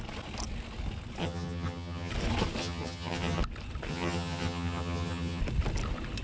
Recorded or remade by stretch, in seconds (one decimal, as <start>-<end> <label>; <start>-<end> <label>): 0.0-1.2 recorded; 1.2-2.1 remade; 2.1-2.6 recorded; 2.6-3.4 remade; 3.4-3.9 recorded; 3.9-5.4 remade; 5.4-6.2 recorded